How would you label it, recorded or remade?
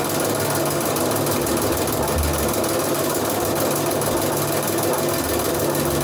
recorded